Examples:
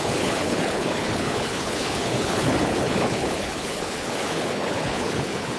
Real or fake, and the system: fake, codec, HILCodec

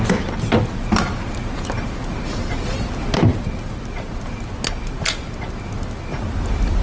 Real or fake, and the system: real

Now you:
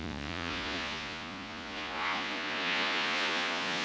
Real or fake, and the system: fake, vocoder, Vocos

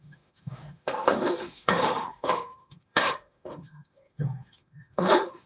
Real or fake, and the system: fake, autoencoder, DAC-VAE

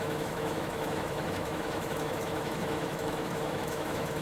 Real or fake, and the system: fake, autoencoder, DAC-VAE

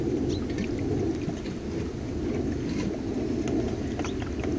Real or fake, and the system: real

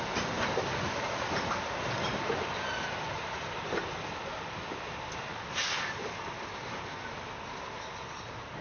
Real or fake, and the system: real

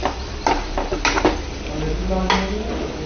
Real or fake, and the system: real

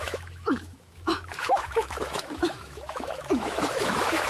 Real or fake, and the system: fake, autoencoder, DAC-VAE